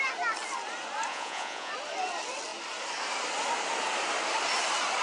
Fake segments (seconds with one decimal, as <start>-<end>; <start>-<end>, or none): 1.1-1.7